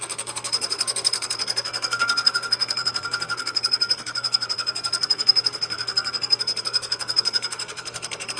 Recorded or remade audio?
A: remade